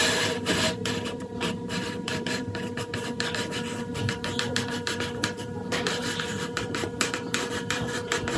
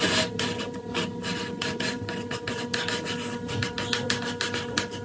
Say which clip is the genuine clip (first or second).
second